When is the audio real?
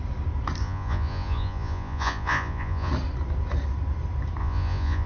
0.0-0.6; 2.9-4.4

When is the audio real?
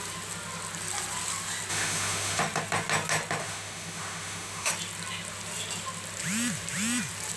0.0-1.7; 2.4-3.4; 4.7-7.4